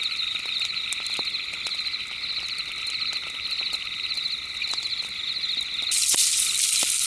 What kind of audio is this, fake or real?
real